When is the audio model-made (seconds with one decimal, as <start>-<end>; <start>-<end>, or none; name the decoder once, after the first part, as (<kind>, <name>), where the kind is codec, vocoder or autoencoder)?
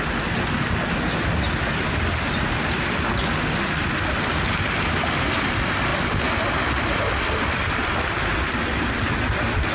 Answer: 5.9-9.2 (vocoder, BigVGAN v2)